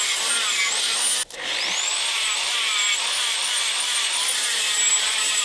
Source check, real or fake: real